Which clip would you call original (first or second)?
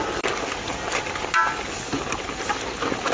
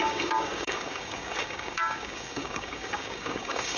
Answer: first